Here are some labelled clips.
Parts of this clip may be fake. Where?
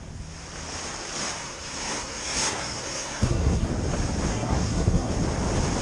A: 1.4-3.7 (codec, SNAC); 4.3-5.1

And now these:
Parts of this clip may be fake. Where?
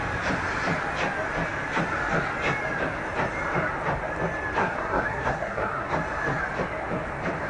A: 4.6-5.9 (codec, SNAC)